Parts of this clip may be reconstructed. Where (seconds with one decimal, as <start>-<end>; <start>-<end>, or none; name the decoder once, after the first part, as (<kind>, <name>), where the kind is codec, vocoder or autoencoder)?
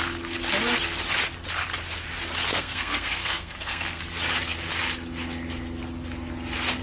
2.5-4.0 (codec, SNAC)